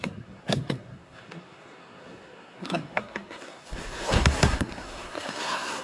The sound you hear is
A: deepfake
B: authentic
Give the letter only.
A